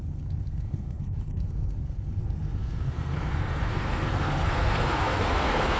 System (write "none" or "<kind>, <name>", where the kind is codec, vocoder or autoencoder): codec, SNAC